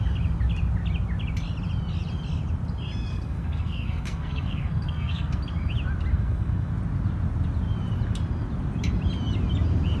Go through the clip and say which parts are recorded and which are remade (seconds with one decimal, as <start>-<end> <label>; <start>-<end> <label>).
0.0-3.1 recorded; 3.1-5.4 remade; 5.4-6.1 recorded; 6.1-6.7 remade; 6.7-10.0 recorded